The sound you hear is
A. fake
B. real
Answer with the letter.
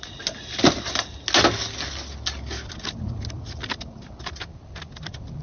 B